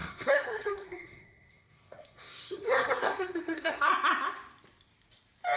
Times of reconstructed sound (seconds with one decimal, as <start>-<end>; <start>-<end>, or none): 0.0-3.9